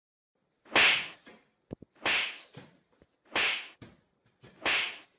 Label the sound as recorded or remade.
recorded